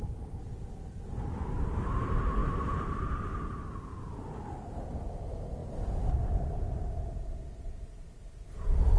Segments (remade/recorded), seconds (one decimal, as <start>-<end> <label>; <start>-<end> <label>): 0.0-9.0 remade